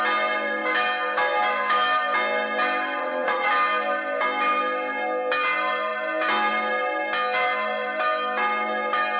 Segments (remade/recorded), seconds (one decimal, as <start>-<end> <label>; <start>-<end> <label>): 0.0-3.0 recorded; 3.0-3.5 remade; 3.5-9.2 recorded